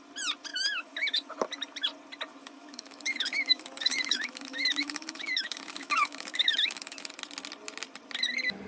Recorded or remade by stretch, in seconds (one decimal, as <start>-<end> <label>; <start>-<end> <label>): 0.0-0.5 recorded; 0.5-1.3 remade; 1.3-2.4 recorded; 2.4-7.1 remade; 7.1-8.7 recorded

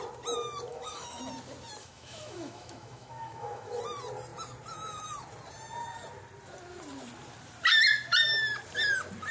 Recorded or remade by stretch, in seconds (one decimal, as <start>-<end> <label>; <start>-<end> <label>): 0.0-0.7 recorded; 0.7-1.2 remade; 1.2-1.8 recorded; 1.8-3.8 remade; 3.8-9.3 recorded

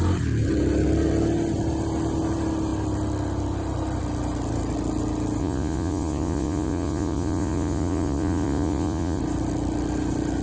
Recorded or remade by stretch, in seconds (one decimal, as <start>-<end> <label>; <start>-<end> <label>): 0.0-5.4 recorded; 5.4-9.2 remade; 9.2-10.4 recorded